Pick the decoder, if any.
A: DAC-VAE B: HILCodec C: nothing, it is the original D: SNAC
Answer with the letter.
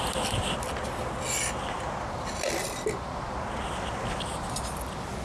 C